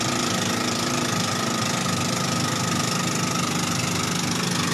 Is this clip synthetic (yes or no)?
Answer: no